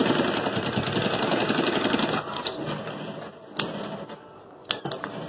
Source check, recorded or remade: recorded